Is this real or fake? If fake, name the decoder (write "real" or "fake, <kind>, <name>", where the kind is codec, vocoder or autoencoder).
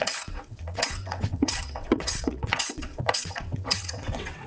fake, vocoder, WaveNeXt